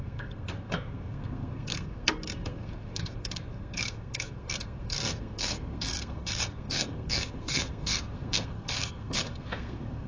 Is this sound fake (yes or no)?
yes